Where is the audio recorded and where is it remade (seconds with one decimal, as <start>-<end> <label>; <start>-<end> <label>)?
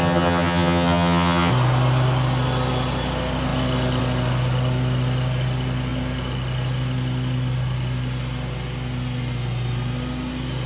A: 0.0-1.5 remade; 1.5-10.7 recorded